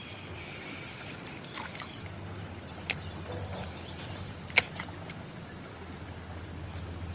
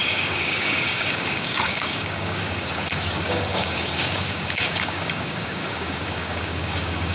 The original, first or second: first